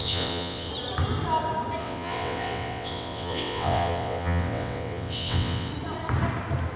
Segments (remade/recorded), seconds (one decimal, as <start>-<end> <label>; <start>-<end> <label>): 0.0-0.7 remade; 0.7-1.8 recorded; 1.8-5.7 remade; 5.7-6.8 recorded